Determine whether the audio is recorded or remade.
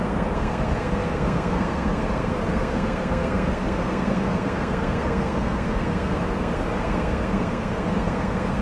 remade